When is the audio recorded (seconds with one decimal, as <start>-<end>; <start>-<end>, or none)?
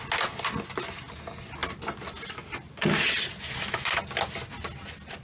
0.0-5.2